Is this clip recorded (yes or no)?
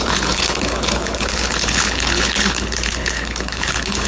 no